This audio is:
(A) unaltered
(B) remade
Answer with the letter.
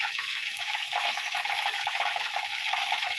B